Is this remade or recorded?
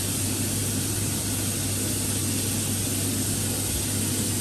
recorded